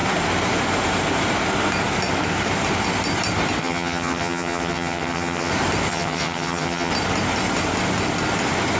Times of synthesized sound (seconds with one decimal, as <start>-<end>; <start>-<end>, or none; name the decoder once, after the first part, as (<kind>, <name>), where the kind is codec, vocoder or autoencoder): 3.6-5.5 (vocoder, HiFi-GAN); 5.9-6.9

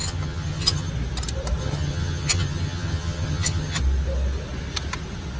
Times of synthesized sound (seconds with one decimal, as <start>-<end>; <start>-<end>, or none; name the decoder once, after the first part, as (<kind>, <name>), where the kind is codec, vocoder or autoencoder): 0.0-0.9 (vocoder, HiFi-GAN); 1.6-3.8

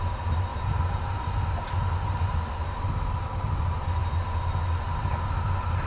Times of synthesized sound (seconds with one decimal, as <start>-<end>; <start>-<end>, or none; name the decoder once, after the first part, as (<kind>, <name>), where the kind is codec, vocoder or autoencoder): none